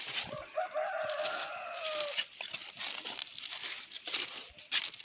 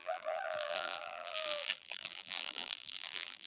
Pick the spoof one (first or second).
second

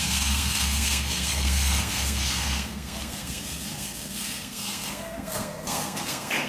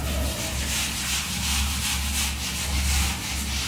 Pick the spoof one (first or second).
first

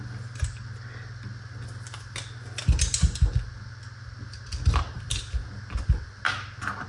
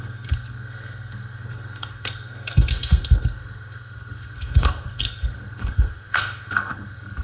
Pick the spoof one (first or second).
second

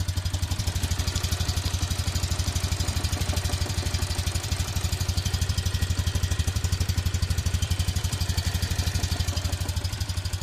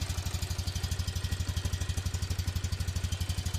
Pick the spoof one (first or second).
first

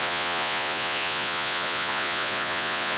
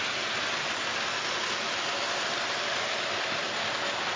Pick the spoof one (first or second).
first